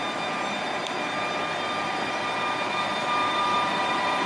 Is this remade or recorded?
recorded